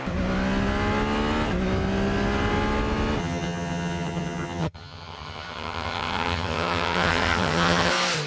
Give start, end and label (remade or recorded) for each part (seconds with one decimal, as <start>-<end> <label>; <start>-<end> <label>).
0.0-3.2 recorded; 3.2-7.9 remade; 7.9-8.3 recorded